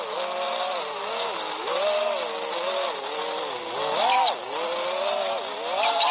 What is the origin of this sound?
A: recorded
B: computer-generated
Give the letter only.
A